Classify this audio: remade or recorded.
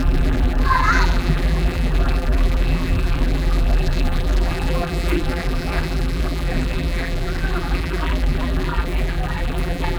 remade